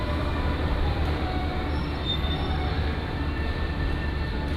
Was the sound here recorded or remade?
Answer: remade